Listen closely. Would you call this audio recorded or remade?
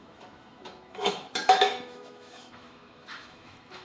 remade